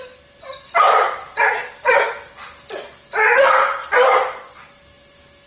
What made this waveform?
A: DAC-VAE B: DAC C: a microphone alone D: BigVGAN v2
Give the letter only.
C